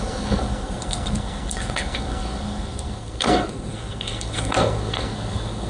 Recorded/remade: remade